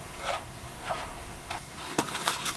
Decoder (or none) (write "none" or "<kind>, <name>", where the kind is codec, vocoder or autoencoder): codec, SNAC